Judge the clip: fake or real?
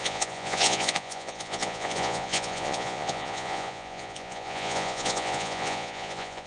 fake